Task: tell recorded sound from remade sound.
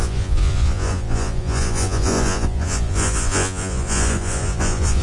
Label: remade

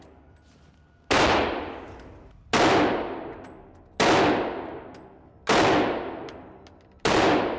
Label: recorded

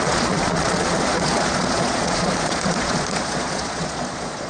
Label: remade